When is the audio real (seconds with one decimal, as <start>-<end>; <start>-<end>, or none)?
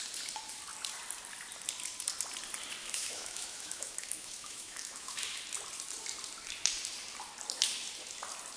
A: 0.0-2.8; 5.4-8.6